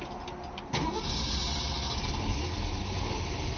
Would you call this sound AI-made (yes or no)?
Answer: no